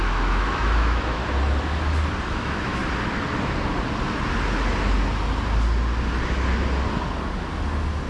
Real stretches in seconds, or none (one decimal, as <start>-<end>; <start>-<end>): 1.2-2.3; 2.8-8.1